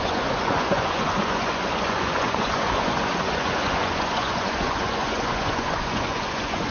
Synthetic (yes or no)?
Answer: yes